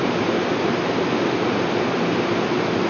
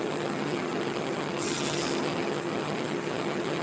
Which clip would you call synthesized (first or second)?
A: second